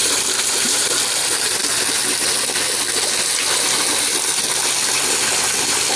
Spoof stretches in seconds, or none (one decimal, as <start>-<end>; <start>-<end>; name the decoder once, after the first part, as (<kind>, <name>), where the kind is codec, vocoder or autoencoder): 0.0-1.0 (vocoder, BigVGAN v2)